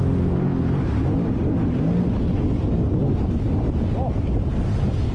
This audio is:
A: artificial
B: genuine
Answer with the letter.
B